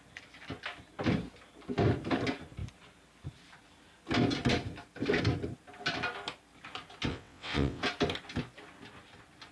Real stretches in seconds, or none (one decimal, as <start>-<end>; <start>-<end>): 0.0-7.1; 7.8-9.5